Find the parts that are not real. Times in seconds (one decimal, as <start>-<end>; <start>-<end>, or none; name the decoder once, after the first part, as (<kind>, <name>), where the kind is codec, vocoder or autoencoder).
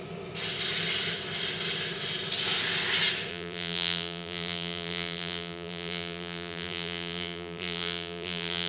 3.3-8.7 (vocoder, BigVGAN v2)